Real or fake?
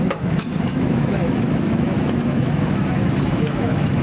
fake